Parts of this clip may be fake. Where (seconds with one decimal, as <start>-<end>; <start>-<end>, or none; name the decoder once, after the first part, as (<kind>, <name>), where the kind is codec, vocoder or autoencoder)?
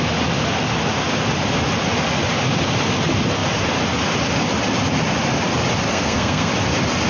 5.9-6.5 (codec, SNAC)